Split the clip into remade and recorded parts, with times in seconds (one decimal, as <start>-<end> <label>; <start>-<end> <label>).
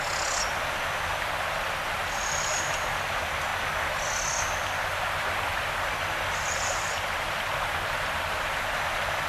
0.0-9.3 recorded